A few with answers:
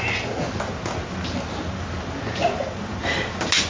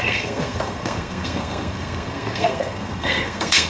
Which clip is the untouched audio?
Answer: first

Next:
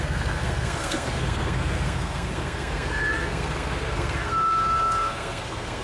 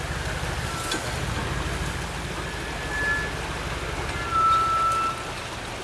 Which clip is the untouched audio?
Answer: second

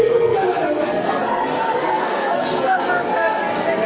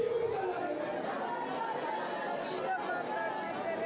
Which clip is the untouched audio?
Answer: second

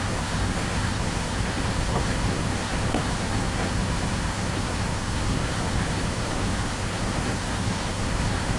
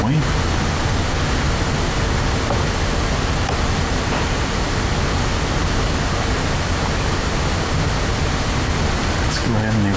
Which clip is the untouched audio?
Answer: second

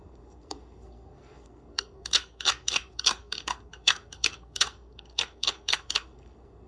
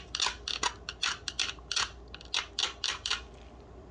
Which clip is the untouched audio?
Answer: second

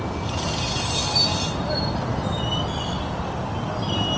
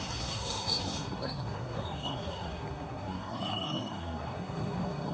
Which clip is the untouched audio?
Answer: first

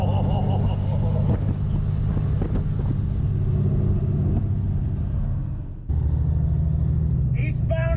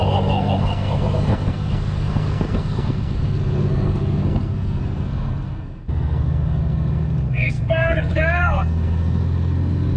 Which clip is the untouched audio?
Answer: first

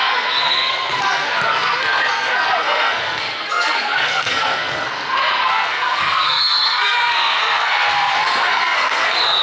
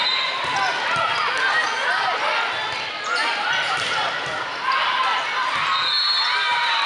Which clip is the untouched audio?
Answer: second